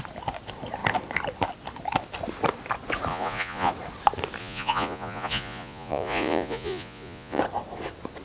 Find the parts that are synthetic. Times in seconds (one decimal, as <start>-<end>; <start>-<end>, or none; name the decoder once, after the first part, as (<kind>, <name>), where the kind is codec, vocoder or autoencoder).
3.1-3.7 (vocoder, Vocos); 4.4-7.4